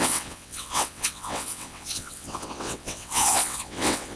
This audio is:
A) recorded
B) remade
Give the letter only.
B